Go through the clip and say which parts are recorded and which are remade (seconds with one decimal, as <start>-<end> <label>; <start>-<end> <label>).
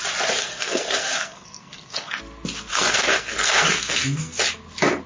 0.0-0.4 recorded; 0.4-2.2 remade; 2.2-2.7 recorded; 2.7-4.4 remade; 4.4-5.1 recorded